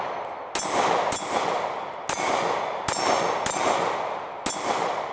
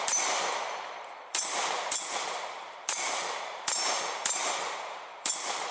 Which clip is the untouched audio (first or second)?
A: first